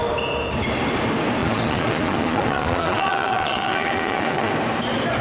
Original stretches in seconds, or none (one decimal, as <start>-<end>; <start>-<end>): 0.0-1.4; 4.5-5.2